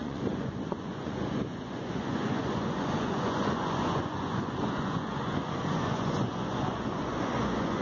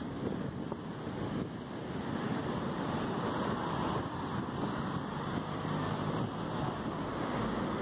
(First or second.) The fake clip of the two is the first